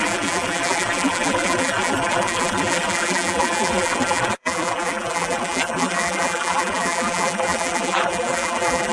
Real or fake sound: fake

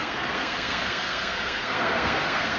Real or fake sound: fake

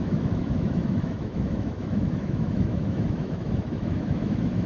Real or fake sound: fake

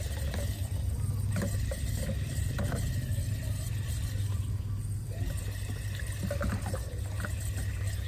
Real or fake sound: real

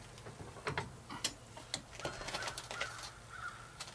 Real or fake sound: real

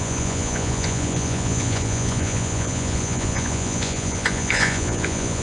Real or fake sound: fake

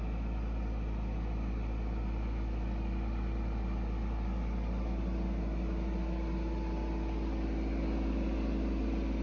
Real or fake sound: real